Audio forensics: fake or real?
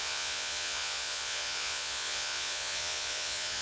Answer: fake